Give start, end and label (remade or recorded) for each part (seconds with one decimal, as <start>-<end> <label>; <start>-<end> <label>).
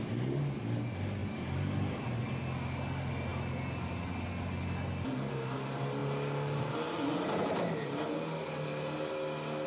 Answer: 0.0-1.2 recorded; 1.2-2.2 remade; 2.2-9.7 recorded